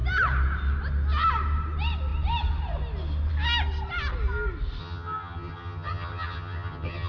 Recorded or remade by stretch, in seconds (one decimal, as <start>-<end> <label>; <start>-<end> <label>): 0.0-4.8 recorded; 4.8-7.1 remade